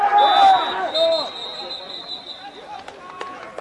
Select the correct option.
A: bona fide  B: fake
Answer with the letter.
A